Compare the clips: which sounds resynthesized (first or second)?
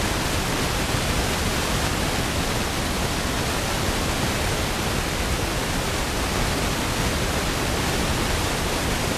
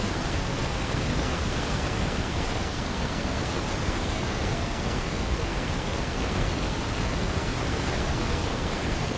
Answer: second